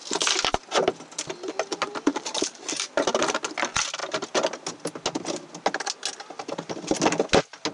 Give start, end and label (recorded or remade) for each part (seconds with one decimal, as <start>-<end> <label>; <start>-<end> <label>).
0.0-2.1 recorded; 2.1-2.9 remade; 2.9-7.7 recorded

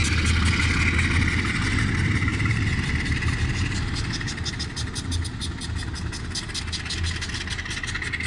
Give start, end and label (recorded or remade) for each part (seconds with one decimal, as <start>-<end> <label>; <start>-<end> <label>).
0.0-2.3 recorded; 2.3-4.5 remade; 4.5-8.3 recorded

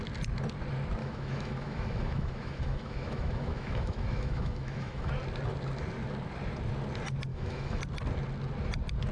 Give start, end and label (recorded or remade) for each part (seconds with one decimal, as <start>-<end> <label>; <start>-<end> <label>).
0.0-1.0 recorded; 1.0-5.1 remade; 5.1-7.3 recorded; 7.3-7.8 remade; 7.8-9.1 recorded

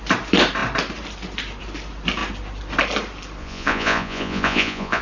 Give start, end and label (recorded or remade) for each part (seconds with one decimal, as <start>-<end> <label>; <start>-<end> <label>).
0.0-3.4 recorded; 3.4-5.0 remade